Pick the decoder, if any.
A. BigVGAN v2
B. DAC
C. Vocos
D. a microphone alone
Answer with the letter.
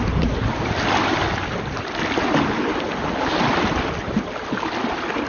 D